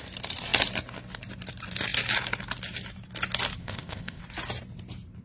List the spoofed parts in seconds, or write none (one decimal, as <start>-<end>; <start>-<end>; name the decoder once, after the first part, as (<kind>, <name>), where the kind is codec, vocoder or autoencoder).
3.6-4.2 (codec, ZipCodec)